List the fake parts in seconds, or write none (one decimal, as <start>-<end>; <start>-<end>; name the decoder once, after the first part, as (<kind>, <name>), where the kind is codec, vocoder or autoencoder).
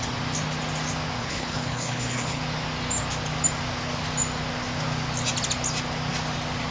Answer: 1.2-2.4 (codec, HILCodec)